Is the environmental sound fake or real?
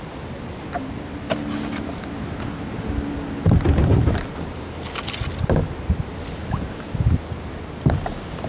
real